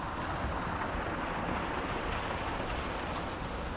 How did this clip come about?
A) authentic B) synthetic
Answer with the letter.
A